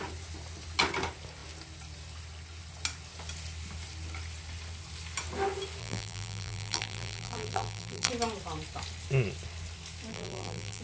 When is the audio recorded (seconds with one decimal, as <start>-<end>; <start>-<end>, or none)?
0.0-5.8; 8.1-10.1